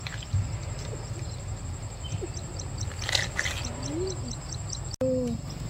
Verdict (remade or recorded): recorded